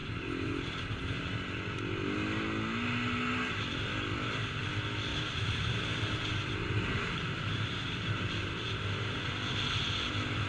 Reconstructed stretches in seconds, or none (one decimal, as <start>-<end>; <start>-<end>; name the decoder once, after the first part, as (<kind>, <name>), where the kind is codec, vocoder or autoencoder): 0.0-1.2 (vocoder, BigVGAN v2); 5.1-9.3